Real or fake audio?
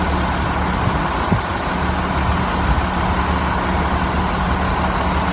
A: real